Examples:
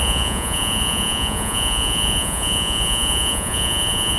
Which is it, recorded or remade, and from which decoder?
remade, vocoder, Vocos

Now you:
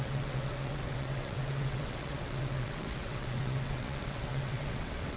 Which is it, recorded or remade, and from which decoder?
remade, vocoder, WaveNeXt